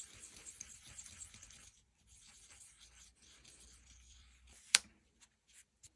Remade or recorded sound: remade